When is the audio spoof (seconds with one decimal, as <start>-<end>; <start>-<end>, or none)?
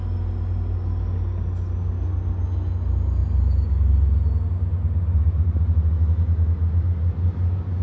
none